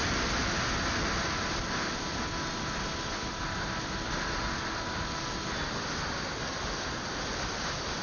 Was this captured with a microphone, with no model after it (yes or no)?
yes